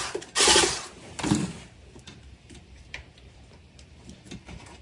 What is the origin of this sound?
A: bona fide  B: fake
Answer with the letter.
B